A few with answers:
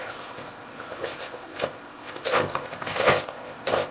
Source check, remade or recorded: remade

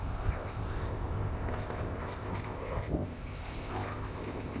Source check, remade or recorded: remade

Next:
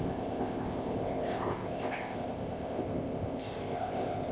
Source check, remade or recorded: remade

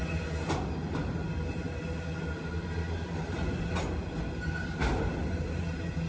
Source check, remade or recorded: recorded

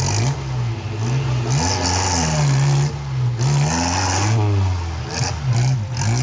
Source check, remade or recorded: recorded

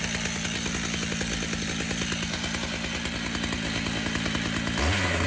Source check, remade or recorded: recorded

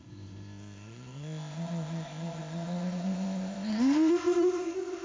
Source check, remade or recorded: remade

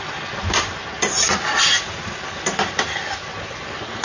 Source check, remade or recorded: recorded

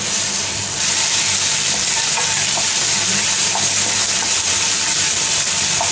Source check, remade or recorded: recorded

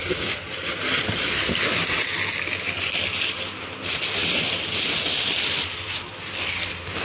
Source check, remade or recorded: recorded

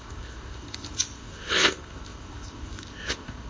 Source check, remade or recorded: remade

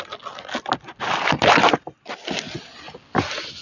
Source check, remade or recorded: recorded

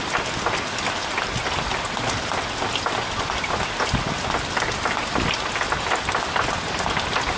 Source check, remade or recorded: recorded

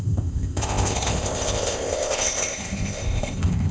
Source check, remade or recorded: remade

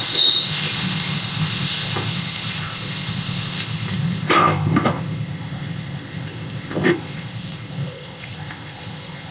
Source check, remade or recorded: remade